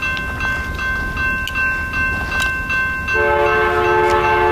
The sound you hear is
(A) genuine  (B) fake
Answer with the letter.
A